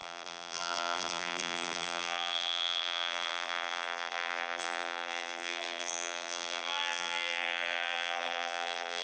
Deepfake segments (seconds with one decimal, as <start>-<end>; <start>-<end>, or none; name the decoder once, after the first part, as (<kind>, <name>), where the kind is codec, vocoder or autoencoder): 0.0-9.0 (vocoder, BigVGAN v2)